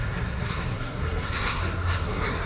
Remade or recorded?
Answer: remade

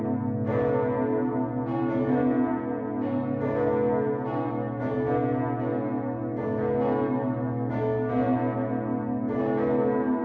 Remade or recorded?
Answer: recorded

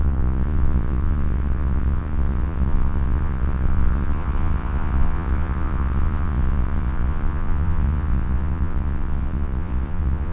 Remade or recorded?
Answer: remade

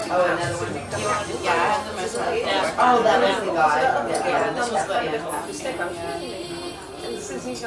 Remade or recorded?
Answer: recorded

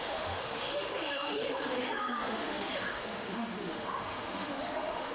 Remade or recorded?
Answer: remade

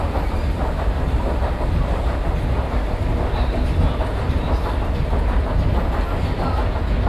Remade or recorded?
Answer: recorded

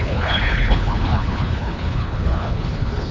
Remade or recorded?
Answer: remade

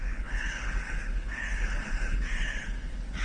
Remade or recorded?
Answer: remade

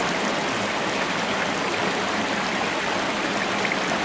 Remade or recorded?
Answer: recorded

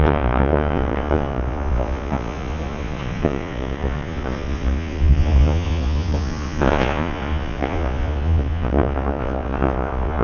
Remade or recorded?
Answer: remade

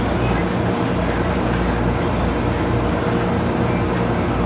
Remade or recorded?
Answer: recorded